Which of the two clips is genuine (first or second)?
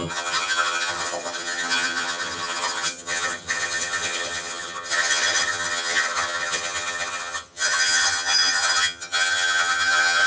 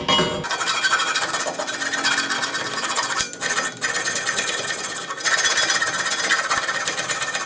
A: second